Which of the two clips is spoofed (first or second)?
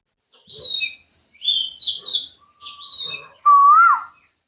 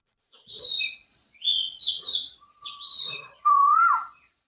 second